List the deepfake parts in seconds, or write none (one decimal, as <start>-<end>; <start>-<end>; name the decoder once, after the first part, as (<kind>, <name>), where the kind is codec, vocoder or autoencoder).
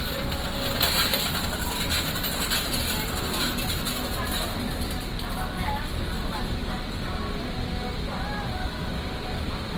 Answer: none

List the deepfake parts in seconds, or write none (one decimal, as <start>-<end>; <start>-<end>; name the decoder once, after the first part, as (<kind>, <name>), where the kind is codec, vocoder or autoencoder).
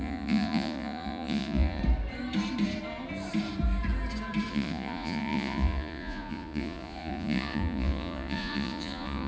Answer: 0.0-1.8 (vocoder, Vocos); 4.5-9.3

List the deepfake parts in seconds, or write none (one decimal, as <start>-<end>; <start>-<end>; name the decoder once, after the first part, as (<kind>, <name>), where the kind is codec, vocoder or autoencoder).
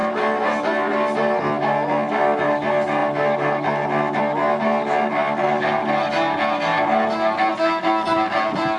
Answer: none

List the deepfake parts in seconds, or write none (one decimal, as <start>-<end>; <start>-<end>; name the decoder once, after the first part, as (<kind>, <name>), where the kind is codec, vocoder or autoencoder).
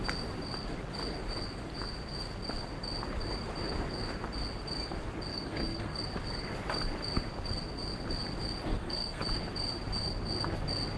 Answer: 5.3-6.0 (codec, SNAC); 8.7-9.2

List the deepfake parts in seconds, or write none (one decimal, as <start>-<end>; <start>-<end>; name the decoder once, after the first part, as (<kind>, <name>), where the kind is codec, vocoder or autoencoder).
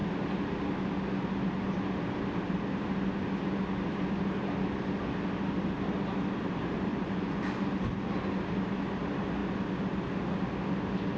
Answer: 6.9-7.4 (vocoder, Vocos)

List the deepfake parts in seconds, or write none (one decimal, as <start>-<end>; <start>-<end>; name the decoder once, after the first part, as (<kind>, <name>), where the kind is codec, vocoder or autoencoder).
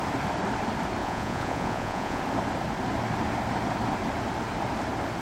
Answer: 1.0-2.2 (vocoder, Vocos)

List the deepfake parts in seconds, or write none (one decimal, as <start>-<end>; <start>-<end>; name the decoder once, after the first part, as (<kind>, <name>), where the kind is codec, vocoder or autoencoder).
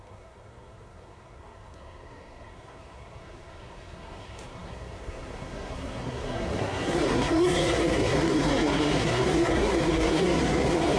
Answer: 0.0-11.0 (codec, SNAC)